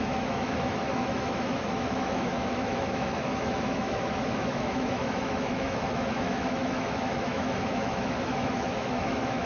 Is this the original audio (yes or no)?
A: no